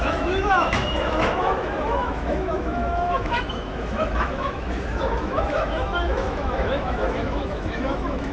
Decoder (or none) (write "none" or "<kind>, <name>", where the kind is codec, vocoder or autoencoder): autoencoder, DAC-VAE